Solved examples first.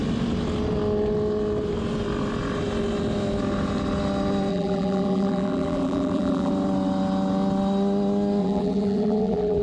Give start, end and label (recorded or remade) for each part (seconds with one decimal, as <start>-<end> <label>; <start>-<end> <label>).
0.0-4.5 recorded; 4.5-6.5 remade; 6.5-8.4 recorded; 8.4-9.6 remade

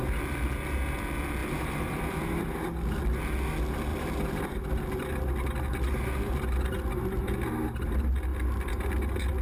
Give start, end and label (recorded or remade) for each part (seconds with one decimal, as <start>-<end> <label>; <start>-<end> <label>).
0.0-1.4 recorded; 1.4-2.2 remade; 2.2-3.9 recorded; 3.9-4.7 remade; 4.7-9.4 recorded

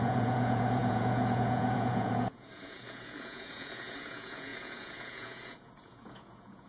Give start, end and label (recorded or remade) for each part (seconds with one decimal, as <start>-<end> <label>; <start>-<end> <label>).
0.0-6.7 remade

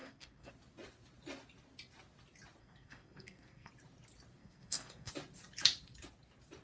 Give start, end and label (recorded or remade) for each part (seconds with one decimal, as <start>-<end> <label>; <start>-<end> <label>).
0.0-0.5 remade; 0.5-2.6 recorded; 2.6-3.7 remade; 3.7-4.4 recorded; 4.4-5.1 remade; 5.1-6.6 recorded

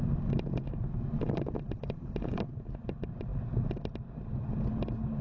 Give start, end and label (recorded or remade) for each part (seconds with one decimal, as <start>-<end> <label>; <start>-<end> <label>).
0.0-5.2 recorded

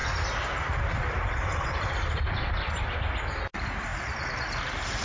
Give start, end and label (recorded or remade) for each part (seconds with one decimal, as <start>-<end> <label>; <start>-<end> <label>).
0.0-3.0 remade; 3.0-5.0 recorded

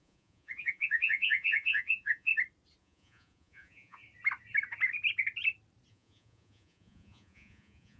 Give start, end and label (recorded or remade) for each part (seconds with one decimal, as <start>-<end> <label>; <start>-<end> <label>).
0.0-2.3 remade; 2.3-2.8 recorded; 2.8-4.0 remade; 4.0-5.9 recorded; 5.9-8.0 remade

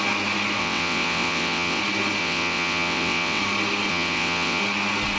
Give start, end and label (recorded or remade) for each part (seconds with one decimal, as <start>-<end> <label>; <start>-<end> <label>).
0.0-0.6 recorded; 0.6-1.8 remade; 1.8-2.2 recorded; 2.2-3.4 remade; 3.4-3.9 recorded; 3.9-4.6 remade; 4.6-5.2 recorded